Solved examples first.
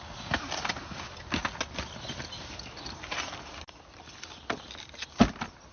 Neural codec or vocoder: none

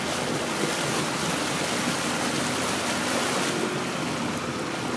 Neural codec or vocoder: none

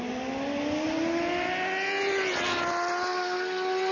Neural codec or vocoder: none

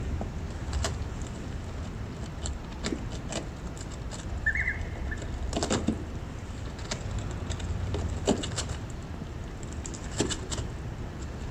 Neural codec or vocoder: none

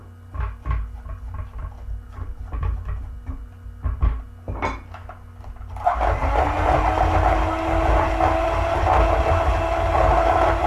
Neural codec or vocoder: none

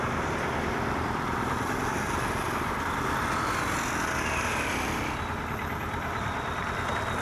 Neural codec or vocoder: none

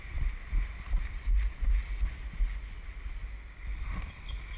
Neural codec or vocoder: none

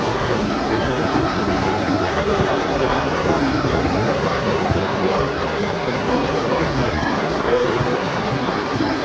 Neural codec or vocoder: codec, SNAC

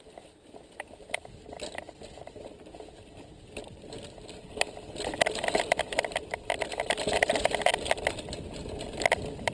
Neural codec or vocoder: none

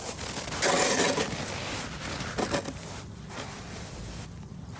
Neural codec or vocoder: none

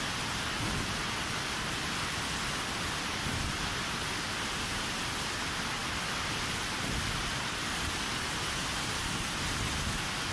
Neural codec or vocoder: none